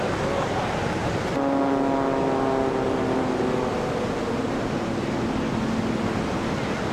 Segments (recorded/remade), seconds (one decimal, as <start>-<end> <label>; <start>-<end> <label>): 0.0-6.9 recorded